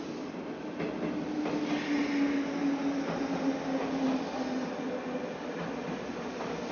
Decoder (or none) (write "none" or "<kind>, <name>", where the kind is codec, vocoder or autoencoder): none